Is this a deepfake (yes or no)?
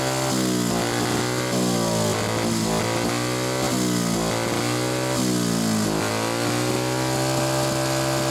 no